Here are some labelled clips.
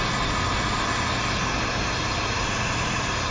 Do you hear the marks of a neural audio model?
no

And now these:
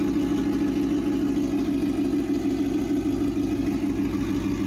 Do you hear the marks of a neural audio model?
no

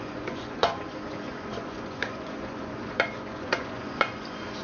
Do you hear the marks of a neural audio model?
yes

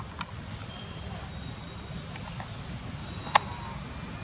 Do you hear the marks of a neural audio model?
no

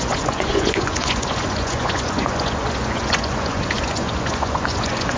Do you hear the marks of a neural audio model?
yes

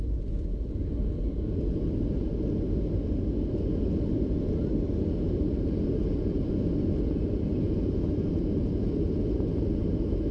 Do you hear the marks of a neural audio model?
no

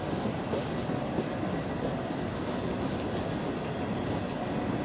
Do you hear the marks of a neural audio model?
no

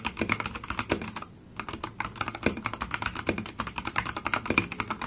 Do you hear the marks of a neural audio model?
no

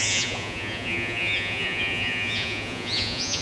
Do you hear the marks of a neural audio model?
yes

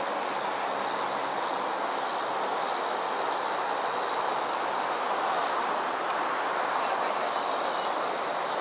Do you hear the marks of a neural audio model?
no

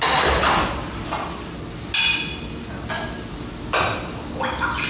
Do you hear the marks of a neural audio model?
no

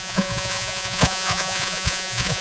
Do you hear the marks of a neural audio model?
yes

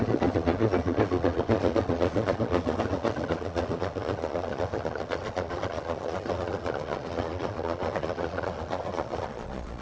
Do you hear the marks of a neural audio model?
yes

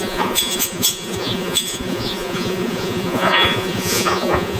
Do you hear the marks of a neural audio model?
yes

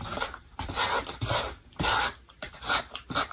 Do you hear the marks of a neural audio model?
no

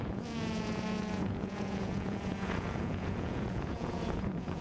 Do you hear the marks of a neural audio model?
yes